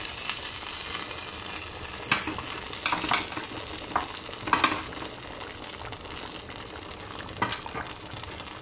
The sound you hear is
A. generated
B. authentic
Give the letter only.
B